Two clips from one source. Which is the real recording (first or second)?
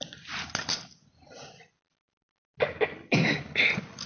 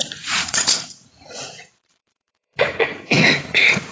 first